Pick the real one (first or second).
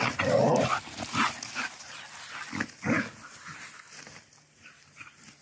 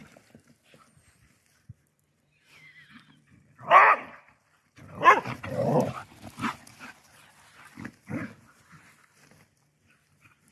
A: first